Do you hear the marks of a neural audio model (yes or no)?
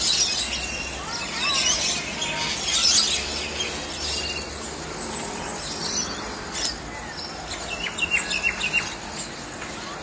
no